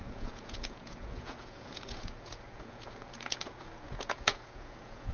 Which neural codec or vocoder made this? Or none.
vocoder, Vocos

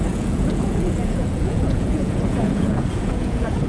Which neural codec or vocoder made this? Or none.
vocoder, Vocos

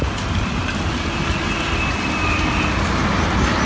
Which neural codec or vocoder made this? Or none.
none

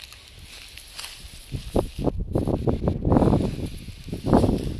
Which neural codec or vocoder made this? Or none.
none